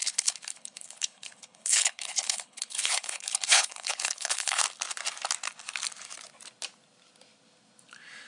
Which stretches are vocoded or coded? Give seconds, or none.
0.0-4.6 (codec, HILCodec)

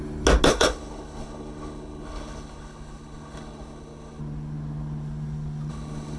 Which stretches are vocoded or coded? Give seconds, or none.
0.5-4.2 (codec, HILCodec); 5.7-6.2

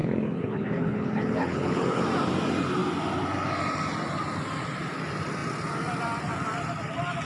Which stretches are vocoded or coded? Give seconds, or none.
0.0-2.0 (codec, HILCodec)

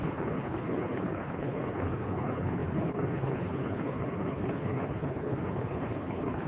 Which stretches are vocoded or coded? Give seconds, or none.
0.0-6.5 (codec, HILCodec)

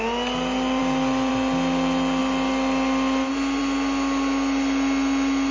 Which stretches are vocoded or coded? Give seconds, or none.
none